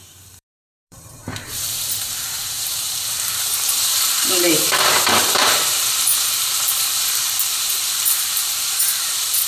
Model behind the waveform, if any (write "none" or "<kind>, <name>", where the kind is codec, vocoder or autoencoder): vocoder, BigVGAN v2